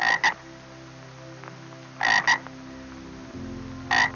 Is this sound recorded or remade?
recorded